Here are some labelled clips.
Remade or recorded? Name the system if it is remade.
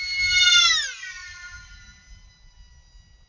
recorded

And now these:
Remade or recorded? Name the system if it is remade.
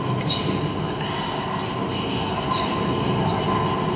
recorded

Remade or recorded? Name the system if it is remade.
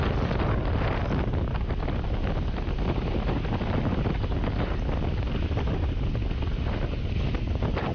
recorded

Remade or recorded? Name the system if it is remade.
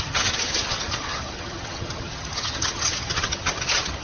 remade, vocoder, HiFi-GAN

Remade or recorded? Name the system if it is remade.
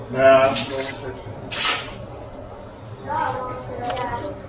recorded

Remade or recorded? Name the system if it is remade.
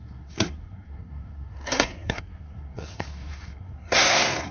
remade, codec, SNAC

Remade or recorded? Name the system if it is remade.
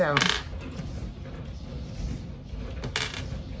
recorded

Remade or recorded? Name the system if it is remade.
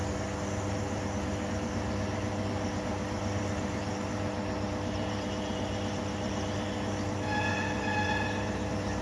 recorded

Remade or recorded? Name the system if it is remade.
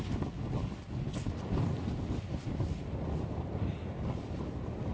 recorded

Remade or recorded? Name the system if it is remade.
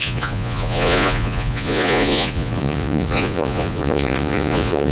remade, vocoder, Vocos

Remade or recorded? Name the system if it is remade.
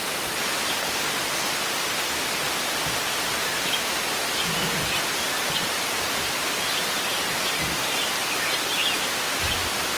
recorded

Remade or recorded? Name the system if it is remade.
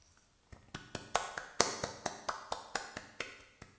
recorded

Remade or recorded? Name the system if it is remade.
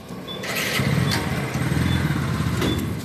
recorded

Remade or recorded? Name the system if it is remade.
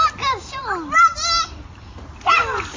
recorded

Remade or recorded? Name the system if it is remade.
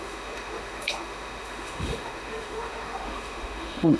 remade, autoencoder, DAC-VAE